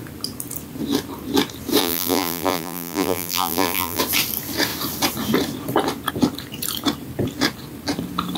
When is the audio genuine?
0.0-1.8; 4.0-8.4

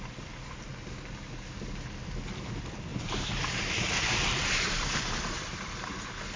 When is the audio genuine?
0.0-2.9; 5.6-6.4